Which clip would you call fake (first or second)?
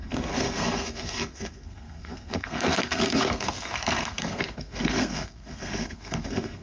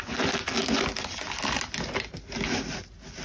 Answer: first